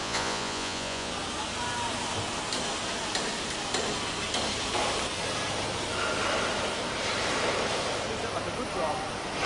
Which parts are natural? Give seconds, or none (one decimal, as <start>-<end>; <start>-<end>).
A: 1.1-9.5